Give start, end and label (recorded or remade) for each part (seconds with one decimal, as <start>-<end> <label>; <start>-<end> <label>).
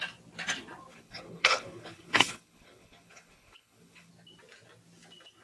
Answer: 0.0-0.9 recorded; 0.9-4.1 remade; 4.1-5.4 recorded